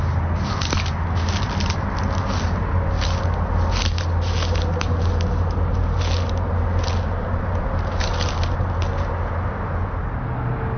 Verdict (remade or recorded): recorded